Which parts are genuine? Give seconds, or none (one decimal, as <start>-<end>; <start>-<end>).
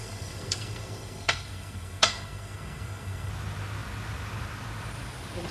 3.3-5.5